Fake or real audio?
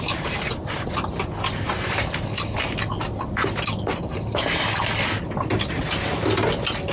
real